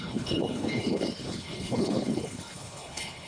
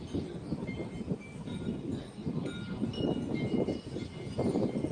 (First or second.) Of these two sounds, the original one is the second